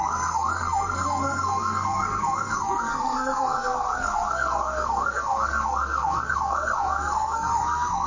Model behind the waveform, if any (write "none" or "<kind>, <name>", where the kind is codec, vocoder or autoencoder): codec, SNAC